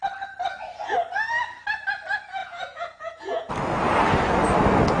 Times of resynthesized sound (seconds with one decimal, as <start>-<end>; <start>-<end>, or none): 2.4-3.5